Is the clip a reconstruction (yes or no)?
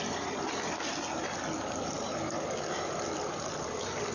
no